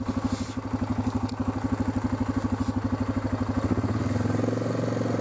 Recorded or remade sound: recorded